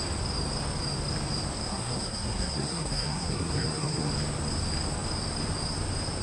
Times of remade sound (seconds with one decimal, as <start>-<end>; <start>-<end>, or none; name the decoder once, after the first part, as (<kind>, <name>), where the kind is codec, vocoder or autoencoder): 1.7-4.1 (codec, SNAC)